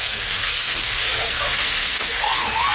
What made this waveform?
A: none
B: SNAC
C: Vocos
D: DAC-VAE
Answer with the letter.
B